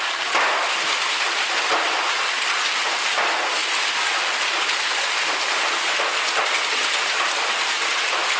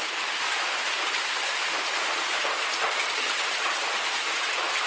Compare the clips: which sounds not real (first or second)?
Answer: second